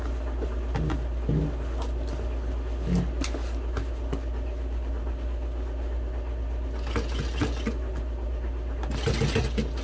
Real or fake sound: real